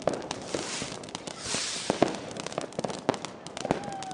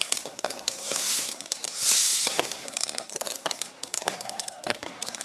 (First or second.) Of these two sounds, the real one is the first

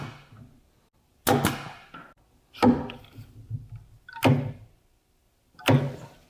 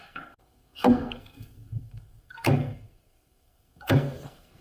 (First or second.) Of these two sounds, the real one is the first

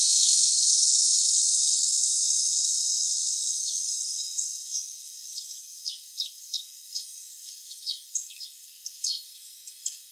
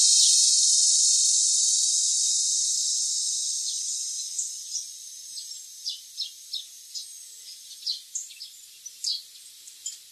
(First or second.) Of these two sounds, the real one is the second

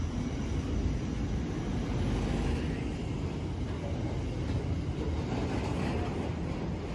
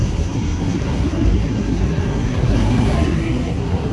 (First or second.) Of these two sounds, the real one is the first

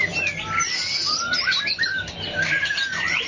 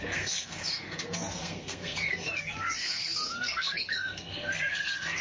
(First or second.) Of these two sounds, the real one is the first